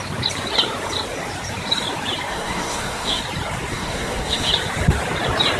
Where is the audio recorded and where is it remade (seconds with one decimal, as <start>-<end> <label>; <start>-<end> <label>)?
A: 0.0-2.3 recorded; 2.3-3.2 remade; 3.2-3.7 recorded; 3.7-4.5 remade; 4.5-5.6 recorded